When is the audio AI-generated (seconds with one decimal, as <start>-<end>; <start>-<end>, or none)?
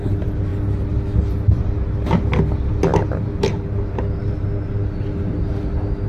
none